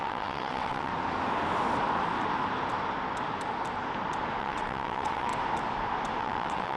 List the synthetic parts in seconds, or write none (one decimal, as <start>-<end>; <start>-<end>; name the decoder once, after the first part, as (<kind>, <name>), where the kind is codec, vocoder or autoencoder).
0.0-0.9 (vocoder, WaveNeXt); 4.4-5.3; 6.2-6.8